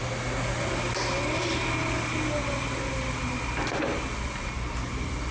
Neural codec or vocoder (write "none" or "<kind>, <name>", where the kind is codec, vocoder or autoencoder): none